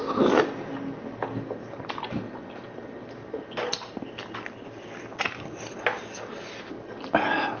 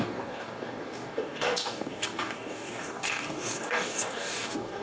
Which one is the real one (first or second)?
first